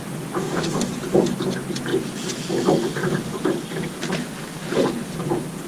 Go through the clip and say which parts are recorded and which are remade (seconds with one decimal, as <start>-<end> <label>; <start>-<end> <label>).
0.0-0.4 recorded; 0.4-0.9 remade; 0.9-5.7 recorded